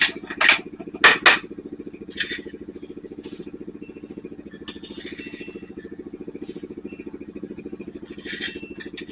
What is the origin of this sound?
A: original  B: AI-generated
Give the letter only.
A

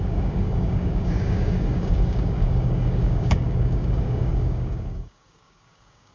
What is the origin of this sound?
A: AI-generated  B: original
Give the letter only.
A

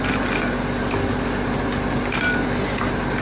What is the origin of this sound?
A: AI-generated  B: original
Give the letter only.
B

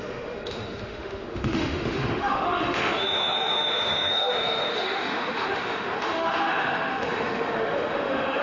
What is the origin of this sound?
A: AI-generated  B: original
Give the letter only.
A